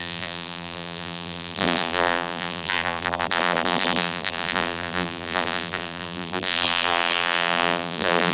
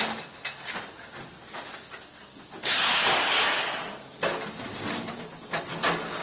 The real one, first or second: second